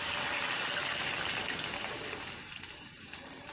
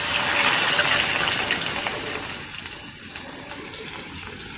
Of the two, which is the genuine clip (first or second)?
second